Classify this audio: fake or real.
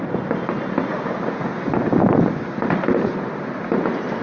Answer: real